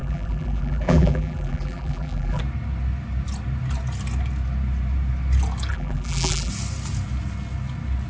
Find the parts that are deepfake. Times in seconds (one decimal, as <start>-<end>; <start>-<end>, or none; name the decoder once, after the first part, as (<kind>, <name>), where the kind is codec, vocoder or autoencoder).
0.0-2.4 (vocoder, BigVGAN v2); 5.7-6.5